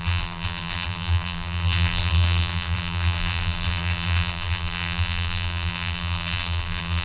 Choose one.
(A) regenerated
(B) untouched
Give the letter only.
A